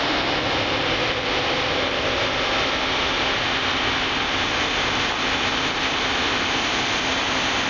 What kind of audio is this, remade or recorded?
recorded